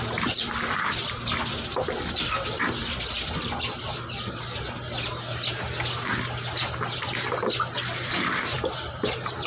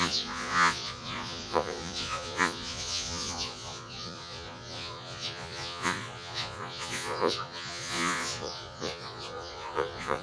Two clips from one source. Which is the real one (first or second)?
first